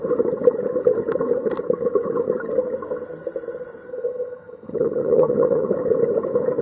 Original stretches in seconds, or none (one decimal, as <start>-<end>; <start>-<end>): 0.0-3.9; 5.7-6.6